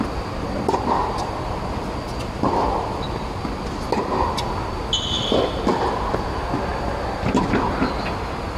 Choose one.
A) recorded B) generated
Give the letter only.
A